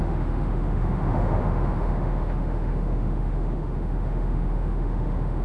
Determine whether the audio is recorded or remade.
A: remade